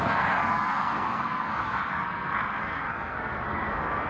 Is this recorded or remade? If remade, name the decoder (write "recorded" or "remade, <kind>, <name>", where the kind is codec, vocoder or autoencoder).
remade, codec, SNAC